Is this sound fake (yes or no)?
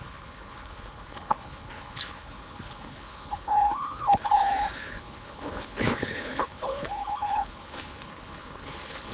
yes